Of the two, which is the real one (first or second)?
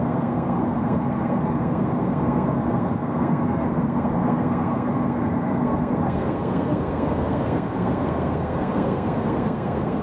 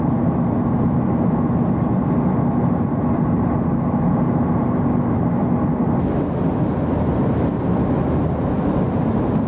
second